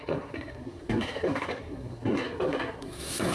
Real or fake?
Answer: fake